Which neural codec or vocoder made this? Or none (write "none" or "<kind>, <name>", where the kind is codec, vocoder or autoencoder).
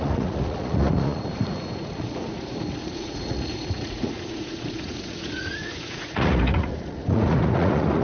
vocoder, Vocos